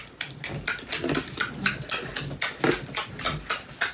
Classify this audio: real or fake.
real